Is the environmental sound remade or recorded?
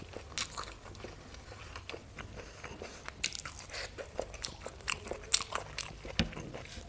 recorded